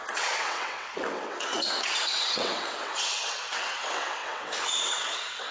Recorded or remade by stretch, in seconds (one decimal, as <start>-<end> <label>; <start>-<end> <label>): 0.0-5.5 remade

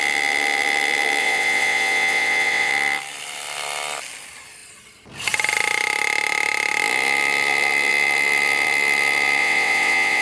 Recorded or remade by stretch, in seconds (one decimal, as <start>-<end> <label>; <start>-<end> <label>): 0.0-1.2 recorded; 1.2-2.7 remade; 2.7-9.4 recorded; 9.4-10.2 remade

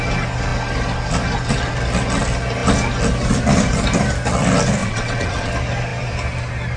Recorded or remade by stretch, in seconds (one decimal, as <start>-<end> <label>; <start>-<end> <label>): 0.0-4.8 recorded; 4.8-5.5 remade; 5.5-6.8 recorded